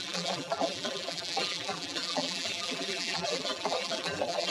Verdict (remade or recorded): remade